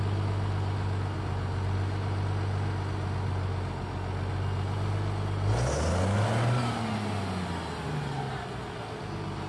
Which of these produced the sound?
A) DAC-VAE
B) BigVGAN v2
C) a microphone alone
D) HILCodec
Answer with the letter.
C